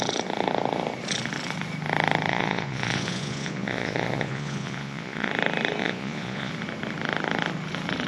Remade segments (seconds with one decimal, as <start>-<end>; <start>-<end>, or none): 2.3-5.3; 5.8-6.5